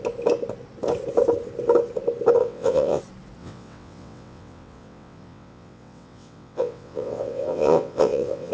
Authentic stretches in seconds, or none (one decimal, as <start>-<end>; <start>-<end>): 0.0-2.4; 3.0-3.4